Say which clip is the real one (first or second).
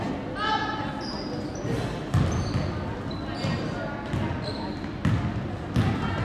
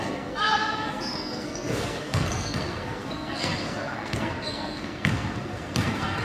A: first